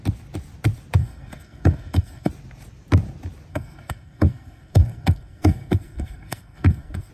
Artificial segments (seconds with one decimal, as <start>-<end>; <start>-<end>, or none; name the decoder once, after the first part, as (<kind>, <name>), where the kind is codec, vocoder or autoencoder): 1.0-2.3 (codec, SNAC); 3.5-7.1